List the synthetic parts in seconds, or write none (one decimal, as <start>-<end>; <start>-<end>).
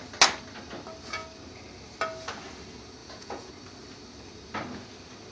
3.0-3.5